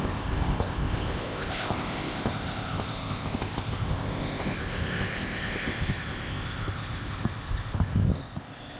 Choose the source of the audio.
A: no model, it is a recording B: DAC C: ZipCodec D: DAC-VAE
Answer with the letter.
C